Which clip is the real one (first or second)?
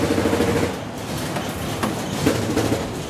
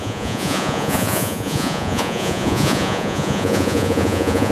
first